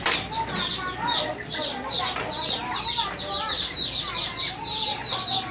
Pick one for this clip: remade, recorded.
recorded